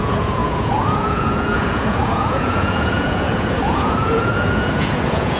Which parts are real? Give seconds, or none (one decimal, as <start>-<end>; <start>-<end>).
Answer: none